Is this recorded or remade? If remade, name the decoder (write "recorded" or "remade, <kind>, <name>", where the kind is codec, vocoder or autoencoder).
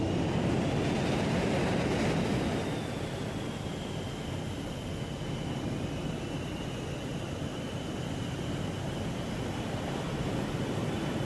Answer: recorded